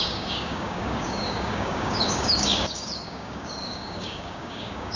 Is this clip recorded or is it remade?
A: remade